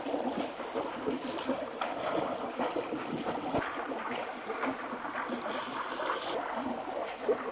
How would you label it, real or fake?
real